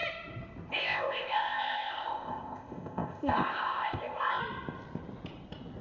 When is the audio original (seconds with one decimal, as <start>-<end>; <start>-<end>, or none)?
0.0-0.7; 4.4-5.8